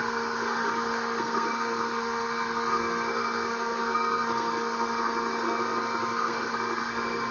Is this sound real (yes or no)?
no